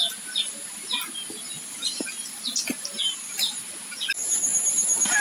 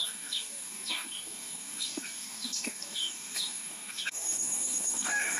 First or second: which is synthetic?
second